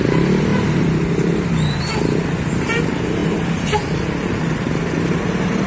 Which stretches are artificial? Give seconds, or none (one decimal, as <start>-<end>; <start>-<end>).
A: none